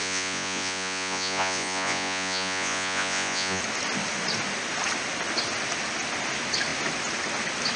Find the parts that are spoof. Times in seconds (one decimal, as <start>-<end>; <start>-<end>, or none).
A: 0.0-3.6